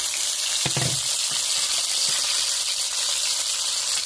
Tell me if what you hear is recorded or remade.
recorded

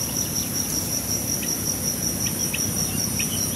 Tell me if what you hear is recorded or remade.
recorded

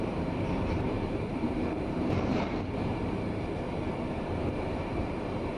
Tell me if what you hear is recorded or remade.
remade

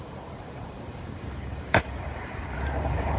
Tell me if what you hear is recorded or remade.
remade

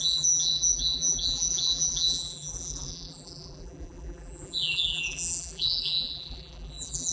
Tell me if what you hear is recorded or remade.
remade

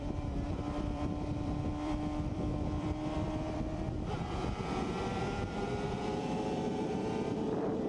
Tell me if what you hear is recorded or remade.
remade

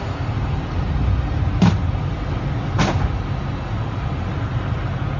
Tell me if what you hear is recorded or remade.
recorded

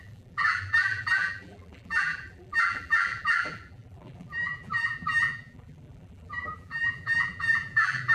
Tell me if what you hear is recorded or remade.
remade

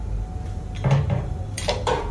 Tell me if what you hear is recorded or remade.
remade